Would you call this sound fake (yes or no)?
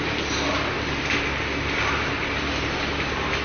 no